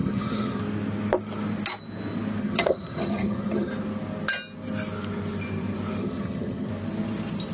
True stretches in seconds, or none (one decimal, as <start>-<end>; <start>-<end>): 0.6-2.4; 3.7-6.0; 6.7-7.5